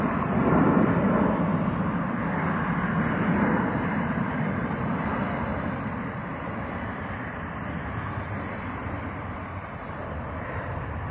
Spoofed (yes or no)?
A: yes